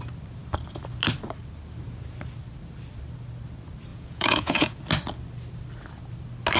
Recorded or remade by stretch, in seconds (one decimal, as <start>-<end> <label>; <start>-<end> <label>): 0.0-3.9 recorded; 3.9-4.8 remade; 4.8-6.6 recorded